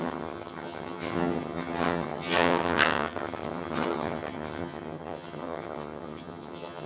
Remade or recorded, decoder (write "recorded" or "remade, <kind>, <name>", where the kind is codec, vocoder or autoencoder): remade, vocoder, HiFi-GAN